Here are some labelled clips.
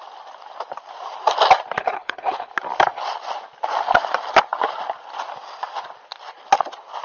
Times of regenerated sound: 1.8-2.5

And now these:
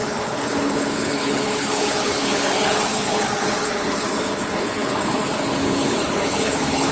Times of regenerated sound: 0.0-6.9

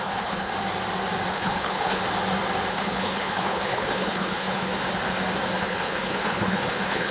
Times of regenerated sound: 0.0-0.5; 1.3-2.0; 2.7-4.7; 5.6-7.1